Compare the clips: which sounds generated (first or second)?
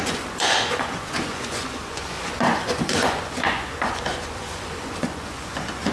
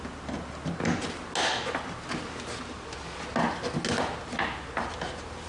first